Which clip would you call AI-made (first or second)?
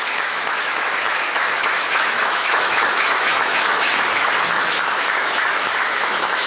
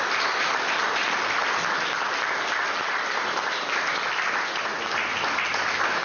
first